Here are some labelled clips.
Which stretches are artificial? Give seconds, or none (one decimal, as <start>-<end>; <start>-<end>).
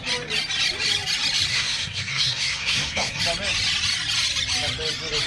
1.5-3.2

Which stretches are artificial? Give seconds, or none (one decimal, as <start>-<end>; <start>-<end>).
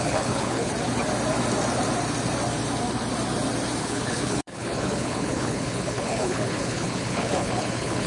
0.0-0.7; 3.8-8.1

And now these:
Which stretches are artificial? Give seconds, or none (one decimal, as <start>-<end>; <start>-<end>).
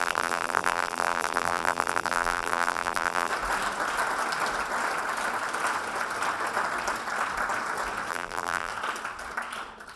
0.0-3.3; 8.1-8.7